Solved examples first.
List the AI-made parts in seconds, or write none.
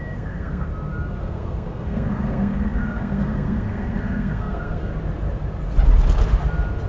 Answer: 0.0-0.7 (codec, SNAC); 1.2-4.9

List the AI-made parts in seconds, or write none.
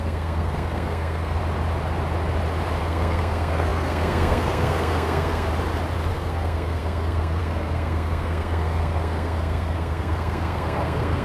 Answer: 0.0-1.4 (codec, SNAC); 2.8-5.5; 6.1-11.2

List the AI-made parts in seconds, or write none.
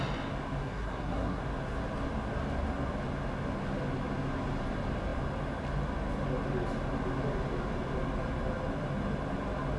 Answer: 0.6-1.4 (codec, SNAC)